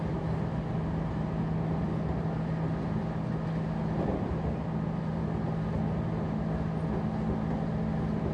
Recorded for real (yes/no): yes